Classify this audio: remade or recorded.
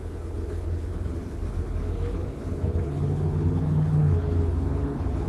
remade